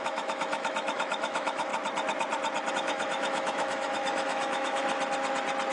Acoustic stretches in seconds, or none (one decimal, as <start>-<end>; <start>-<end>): 1.7-2.7; 4.8-5.7